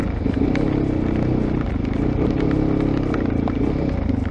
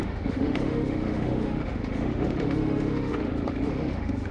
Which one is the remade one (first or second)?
second